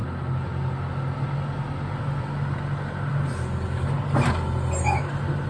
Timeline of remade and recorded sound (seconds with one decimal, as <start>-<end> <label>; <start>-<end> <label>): 0.0-5.5 recorded